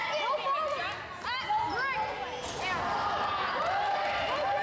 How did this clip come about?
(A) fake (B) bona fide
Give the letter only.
B